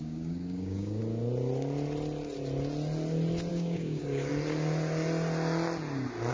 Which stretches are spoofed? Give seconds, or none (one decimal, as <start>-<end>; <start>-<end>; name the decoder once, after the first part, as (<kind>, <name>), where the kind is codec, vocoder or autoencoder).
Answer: 0.0-1.0 (codec, DAC); 3.5-4.3